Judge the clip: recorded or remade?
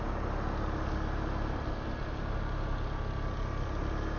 recorded